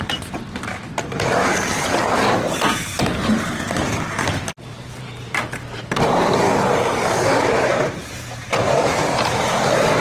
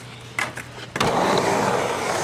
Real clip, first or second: second